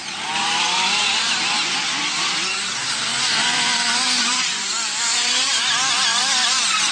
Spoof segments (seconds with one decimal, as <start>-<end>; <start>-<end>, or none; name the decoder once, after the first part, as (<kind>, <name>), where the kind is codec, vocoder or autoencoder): 3.1-5.9 (vocoder, BigVGAN v2)